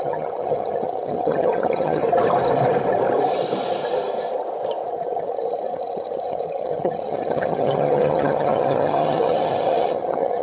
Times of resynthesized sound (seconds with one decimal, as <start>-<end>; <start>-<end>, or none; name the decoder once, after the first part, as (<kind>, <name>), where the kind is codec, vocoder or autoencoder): 0.0-2.0 (vocoder, HiFi-GAN); 4.9-10.4